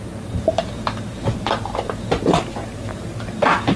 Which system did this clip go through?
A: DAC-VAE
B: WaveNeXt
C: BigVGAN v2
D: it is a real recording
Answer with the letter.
C